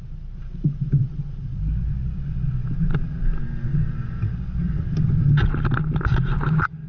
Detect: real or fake real